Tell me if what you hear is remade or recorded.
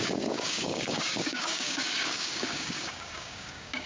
remade